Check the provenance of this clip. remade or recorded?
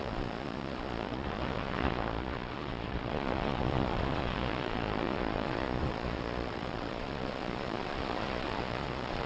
remade